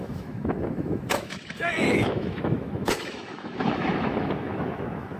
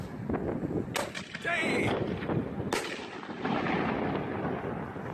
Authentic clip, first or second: second